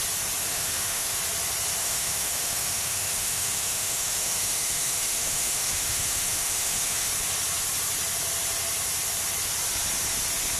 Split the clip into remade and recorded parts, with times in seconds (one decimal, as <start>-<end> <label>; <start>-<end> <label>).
0.0-0.5 recorded; 0.5-1.2 remade; 1.2-1.8 recorded; 1.8-7.1 remade; 7.1-10.6 recorded